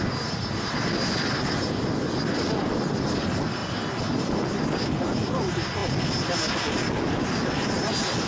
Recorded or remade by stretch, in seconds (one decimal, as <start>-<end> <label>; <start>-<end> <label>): 0.0-8.3 recorded